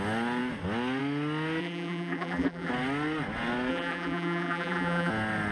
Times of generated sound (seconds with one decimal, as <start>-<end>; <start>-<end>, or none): 1.6-2.7; 3.7-5.1